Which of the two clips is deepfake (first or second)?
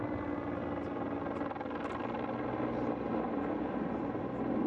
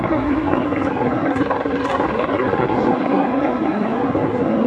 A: second